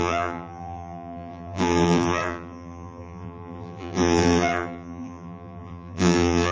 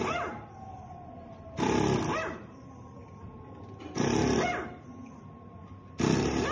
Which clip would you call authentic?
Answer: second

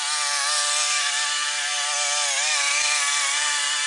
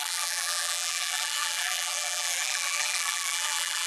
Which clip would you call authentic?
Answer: first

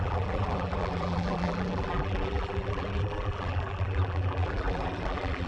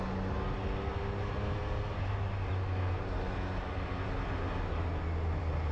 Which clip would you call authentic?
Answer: second